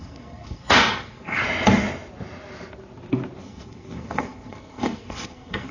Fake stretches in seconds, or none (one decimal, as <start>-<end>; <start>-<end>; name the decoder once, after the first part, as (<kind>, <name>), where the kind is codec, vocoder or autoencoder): 0.0-1.4 (codec, SNAC); 3.4-5.7